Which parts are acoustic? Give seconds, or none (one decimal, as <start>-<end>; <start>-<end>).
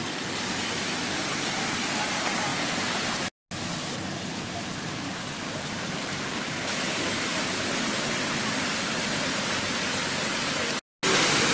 0.0-2.5; 3.2-4.3; 8.2-11.5